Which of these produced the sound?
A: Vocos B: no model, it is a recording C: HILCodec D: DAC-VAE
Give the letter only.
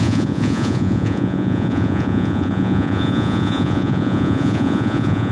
A